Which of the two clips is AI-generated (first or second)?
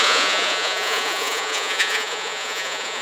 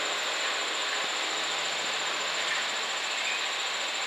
first